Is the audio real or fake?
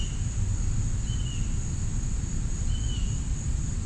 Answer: real